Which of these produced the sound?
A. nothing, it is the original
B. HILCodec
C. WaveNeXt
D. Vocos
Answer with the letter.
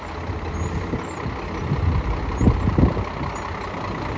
A